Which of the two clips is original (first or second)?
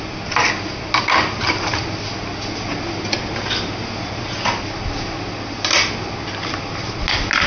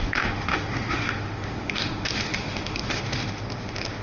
first